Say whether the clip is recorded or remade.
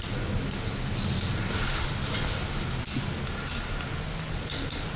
recorded